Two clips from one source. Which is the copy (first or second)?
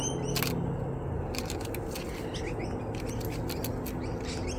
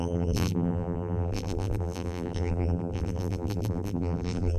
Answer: second